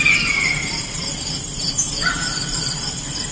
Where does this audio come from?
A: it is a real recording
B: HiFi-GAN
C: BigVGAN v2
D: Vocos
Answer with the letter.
A